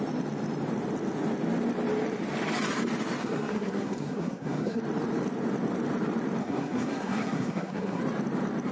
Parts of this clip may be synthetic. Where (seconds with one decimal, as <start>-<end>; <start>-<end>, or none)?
3.2-4.8; 6.4-8.0